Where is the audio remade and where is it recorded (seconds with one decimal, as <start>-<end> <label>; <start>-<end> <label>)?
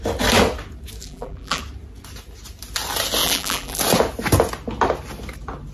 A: 0.0-1.0 recorded; 1.0-1.6 remade; 1.6-3.2 recorded; 3.2-3.8 remade; 3.8-5.7 recorded